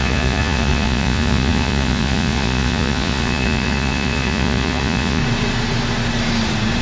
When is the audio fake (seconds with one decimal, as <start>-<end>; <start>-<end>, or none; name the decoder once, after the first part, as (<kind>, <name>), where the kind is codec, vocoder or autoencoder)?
0.0-5.2 (vocoder, Vocos)